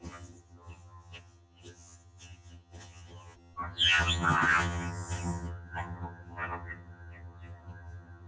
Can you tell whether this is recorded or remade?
remade